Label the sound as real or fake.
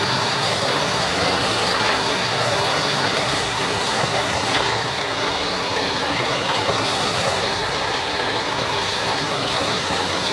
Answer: fake